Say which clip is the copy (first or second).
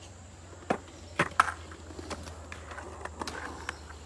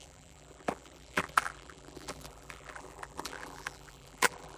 second